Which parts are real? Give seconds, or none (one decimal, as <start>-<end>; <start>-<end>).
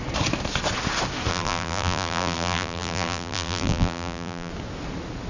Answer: 0.0-1.3; 4.5-5.3